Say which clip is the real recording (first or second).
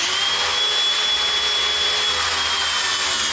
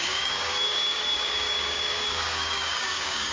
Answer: first